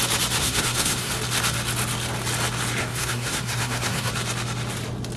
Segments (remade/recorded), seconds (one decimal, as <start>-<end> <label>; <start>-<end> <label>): 0.0-0.4 recorded; 0.4-1.1 remade; 1.1-2.8 recorded; 2.8-4.1 remade; 4.1-5.2 recorded